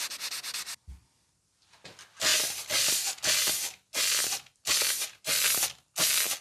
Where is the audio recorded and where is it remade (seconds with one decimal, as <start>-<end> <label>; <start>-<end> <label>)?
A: 0.0-6.4 recorded